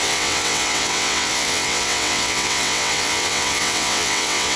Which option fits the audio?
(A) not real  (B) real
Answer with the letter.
A